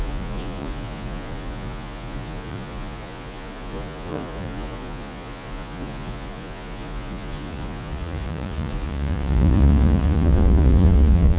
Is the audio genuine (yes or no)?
no